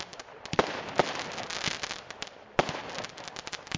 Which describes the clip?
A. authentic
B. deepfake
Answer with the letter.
A